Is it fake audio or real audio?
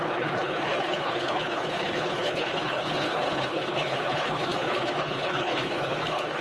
fake